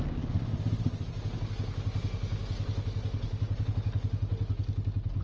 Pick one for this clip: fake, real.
real